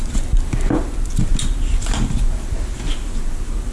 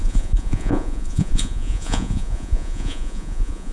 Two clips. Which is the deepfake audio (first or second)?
second